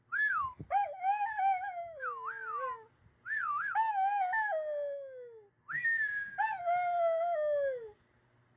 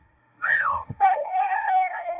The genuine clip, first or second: first